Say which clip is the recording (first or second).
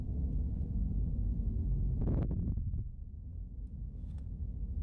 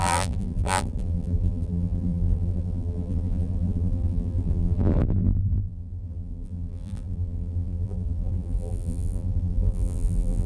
first